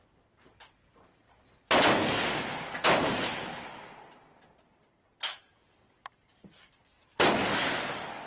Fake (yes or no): no